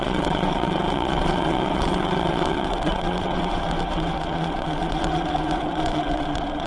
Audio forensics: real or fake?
fake